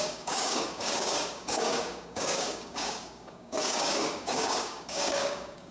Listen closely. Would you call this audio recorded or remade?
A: remade